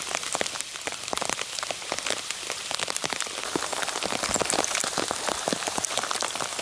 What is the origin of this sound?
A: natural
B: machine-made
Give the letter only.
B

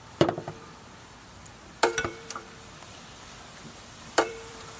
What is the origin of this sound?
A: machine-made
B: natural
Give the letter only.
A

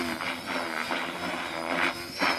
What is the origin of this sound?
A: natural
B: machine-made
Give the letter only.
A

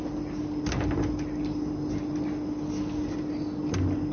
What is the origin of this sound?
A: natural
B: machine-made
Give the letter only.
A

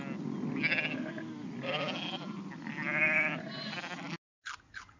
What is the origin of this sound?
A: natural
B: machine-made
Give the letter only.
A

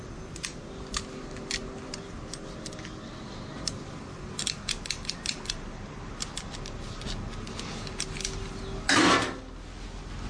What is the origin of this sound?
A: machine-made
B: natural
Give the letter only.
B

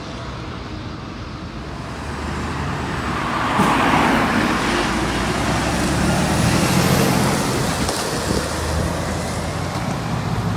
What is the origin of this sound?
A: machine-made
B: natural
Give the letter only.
B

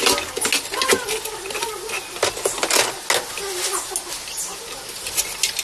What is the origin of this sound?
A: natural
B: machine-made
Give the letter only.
A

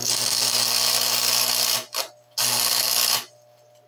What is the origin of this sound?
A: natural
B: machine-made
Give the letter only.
A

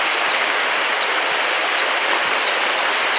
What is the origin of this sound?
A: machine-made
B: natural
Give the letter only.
B